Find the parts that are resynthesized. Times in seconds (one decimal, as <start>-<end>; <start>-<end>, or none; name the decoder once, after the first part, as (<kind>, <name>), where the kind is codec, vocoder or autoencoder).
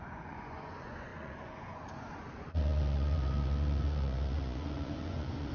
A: 0.0-5.5 (vocoder, Vocos)